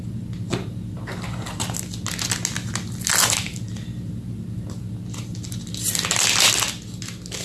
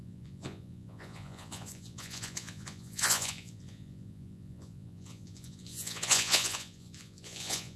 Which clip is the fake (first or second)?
second